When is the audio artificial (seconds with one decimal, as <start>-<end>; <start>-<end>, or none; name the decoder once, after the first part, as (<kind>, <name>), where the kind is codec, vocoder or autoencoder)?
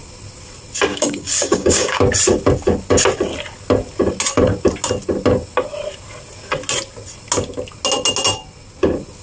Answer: 0.9-2.0 (codec, DAC)